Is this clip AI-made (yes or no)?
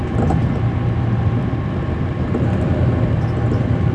no